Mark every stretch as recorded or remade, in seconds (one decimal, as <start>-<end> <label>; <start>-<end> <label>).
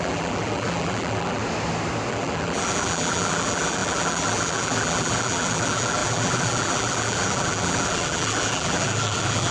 0.0-1.4 remade; 1.4-2.1 recorded; 2.1-9.5 remade